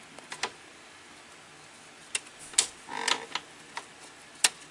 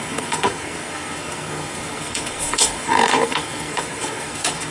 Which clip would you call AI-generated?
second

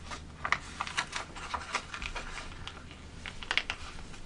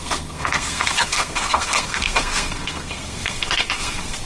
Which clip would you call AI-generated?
second